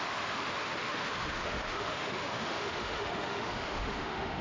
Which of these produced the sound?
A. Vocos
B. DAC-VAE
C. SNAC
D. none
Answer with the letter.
B